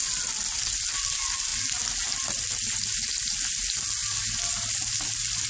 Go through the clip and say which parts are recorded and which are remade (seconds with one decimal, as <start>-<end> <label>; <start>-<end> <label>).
0.0-5.5 recorded